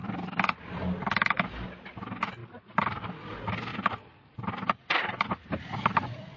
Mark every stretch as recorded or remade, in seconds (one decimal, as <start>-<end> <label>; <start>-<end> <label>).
0.0-0.6 remade; 0.6-2.4 recorded; 2.4-3.0 remade; 3.0-3.7 recorded; 3.7-4.8 remade; 4.8-6.4 recorded